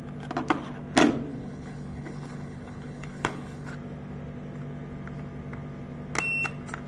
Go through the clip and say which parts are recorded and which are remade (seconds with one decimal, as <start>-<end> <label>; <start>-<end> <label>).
0.0-1.3 recorded; 1.3-3.7 remade; 3.7-6.9 recorded